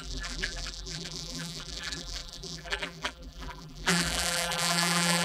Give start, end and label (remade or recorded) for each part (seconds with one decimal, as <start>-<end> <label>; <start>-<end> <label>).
0.0-5.2 remade